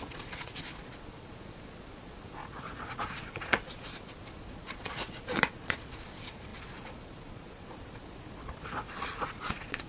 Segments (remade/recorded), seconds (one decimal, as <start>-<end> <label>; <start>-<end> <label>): 0.0-9.9 remade